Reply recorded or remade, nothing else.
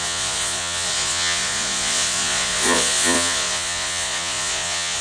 remade